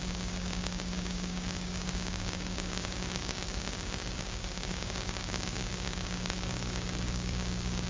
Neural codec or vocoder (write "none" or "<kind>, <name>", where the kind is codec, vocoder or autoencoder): codec, DAC